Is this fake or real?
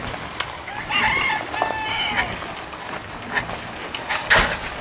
real